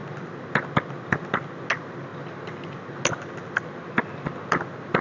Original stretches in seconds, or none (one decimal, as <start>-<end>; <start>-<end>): 0.0-5.0